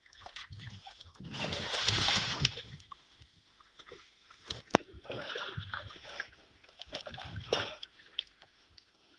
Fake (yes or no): yes